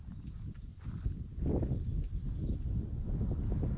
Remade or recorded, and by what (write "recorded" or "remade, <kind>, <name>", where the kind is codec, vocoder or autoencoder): recorded